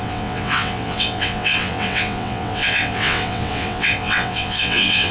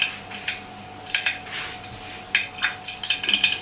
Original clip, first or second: second